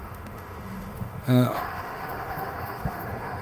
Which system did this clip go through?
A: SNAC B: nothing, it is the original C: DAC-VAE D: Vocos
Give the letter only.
C